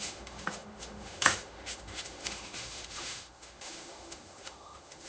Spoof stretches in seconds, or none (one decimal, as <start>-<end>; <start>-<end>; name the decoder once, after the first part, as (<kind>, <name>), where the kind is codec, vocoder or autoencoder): 0.0-5.1 (autoencoder, DAC-VAE)